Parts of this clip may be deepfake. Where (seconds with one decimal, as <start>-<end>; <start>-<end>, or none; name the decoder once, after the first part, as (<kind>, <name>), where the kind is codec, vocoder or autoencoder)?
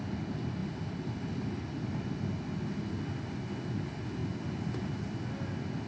0.6-1.6 (vocoder, BigVGAN v2)